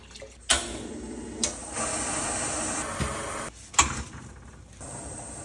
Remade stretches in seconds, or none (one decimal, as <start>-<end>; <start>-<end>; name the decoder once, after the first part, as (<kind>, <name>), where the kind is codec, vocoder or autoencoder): none